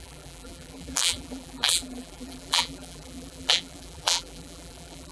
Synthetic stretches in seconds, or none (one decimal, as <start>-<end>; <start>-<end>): 0.0-5.1